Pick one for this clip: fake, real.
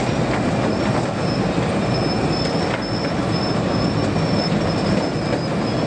real